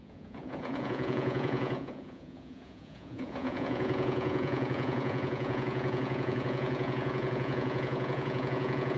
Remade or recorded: remade